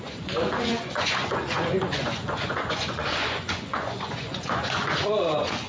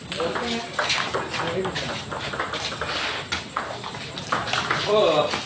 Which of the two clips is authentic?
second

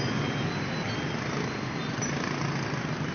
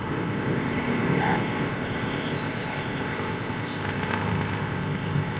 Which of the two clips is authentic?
first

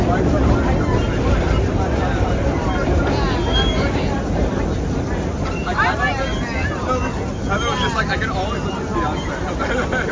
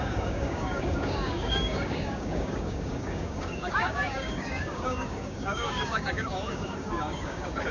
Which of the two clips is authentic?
first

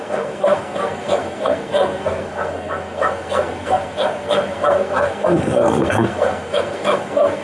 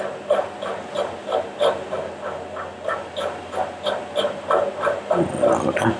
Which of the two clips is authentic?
second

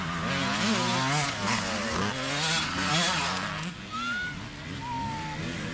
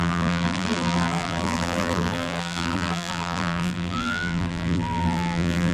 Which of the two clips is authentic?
first